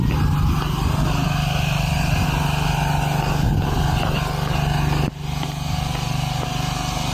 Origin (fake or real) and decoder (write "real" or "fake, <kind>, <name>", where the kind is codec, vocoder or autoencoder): real